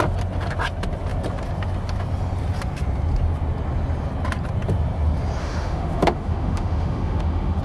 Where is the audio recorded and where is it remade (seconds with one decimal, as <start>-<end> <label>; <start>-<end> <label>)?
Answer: 0.0-5.4 recorded; 5.4-7.6 remade